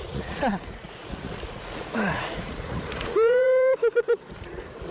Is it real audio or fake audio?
fake